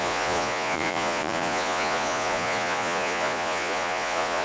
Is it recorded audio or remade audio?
remade